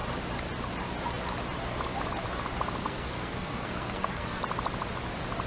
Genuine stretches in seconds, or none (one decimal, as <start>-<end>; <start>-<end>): 0.0-2.8; 4.4-5.5